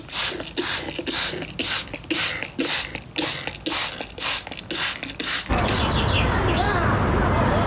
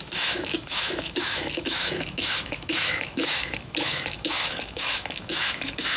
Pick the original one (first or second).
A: first